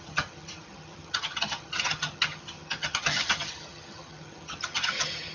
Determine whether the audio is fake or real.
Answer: fake